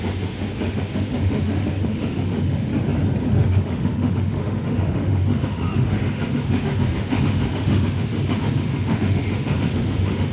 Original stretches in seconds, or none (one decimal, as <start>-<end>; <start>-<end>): 2.7-3.3